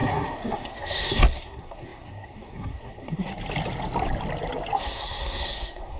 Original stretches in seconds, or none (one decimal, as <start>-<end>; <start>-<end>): 3.3-4.8

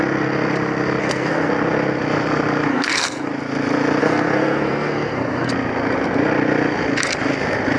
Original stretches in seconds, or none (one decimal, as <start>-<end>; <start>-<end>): 0.0-1.0; 1.5-2.7; 3.3-4.0; 5.5-7.8

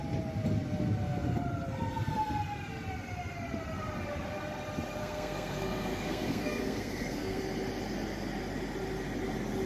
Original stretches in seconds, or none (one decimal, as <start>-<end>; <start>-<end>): 0.0-5.0; 7.4-9.7

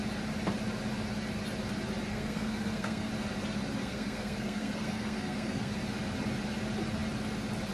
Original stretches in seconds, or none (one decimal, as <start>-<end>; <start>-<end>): 0.0-2.1; 3.1-3.8; 5.7-7.7

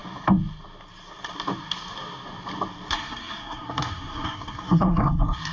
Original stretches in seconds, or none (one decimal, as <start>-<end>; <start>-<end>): 0.0-2.9

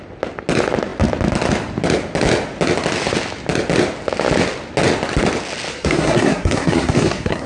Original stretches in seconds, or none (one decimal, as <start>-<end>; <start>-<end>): 0.0-5.7